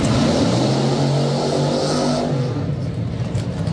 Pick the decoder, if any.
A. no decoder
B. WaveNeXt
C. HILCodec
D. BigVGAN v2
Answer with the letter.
A